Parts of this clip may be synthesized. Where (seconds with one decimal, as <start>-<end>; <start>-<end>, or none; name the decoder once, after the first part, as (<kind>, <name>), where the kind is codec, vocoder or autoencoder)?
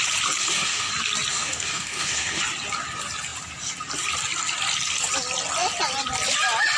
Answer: 0.4-0.9 (codec, DAC); 1.3-2.4